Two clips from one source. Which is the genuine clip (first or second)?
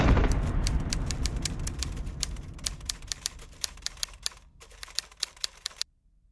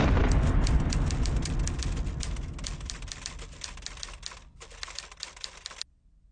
second